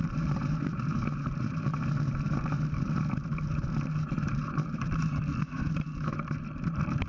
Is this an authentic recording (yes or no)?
no